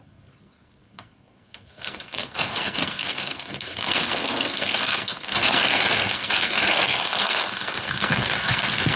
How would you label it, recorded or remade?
remade